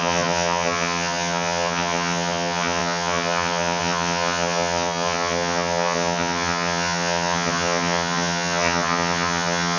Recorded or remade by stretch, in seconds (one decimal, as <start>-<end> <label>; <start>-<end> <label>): 0.0-9.8 remade